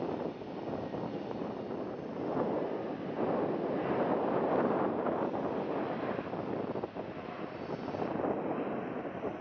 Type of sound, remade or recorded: recorded